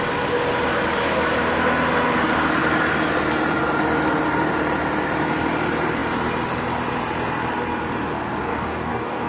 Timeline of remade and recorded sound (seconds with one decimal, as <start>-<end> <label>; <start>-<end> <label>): 0.0-8.5 recorded; 8.5-9.3 remade